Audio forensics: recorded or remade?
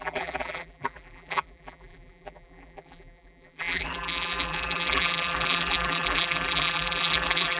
remade